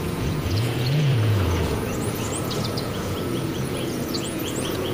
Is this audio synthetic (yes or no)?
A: yes